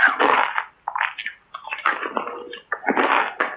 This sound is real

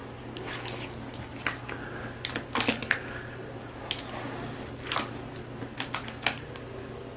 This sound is real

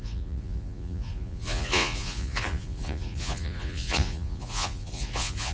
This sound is fake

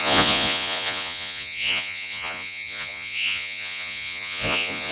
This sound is fake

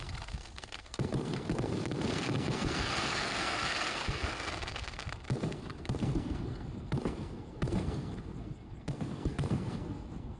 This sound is fake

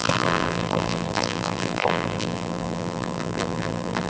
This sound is fake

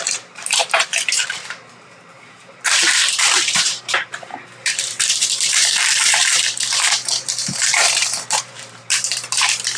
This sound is fake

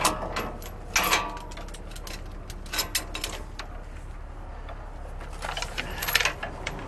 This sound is real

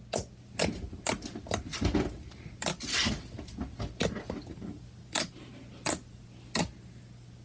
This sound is real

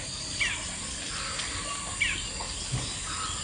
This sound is real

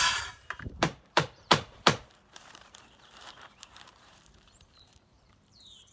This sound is fake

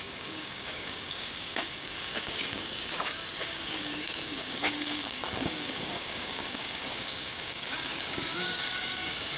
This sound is fake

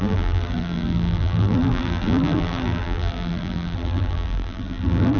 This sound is fake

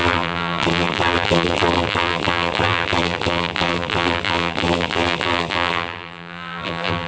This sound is fake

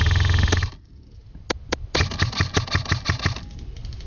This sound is real